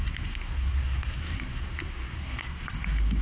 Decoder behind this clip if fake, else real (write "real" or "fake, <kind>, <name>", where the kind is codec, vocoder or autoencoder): fake, codec, SNAC